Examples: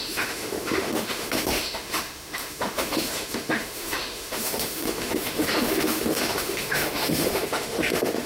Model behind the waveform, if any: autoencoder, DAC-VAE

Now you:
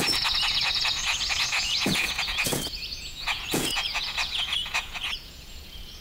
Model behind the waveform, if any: vocoder, Vocos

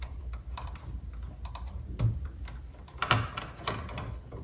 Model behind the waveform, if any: none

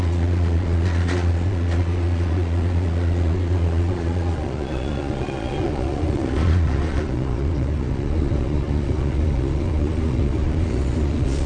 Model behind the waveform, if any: vocoder, Vocos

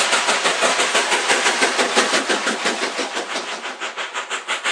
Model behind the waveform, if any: none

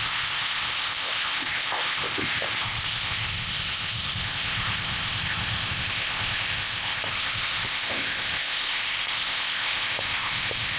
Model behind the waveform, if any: codec, ZipCodec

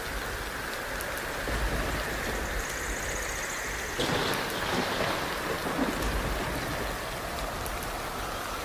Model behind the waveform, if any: none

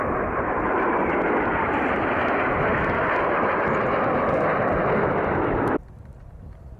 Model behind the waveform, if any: vocoder, BigVGAN v2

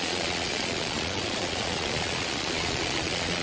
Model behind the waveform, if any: vocoder, Vocos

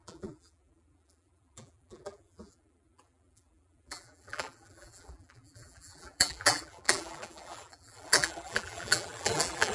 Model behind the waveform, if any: vocoder, BigVGAN v2